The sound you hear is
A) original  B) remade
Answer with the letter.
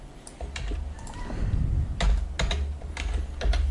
A